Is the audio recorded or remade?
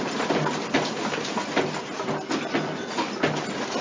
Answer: recorded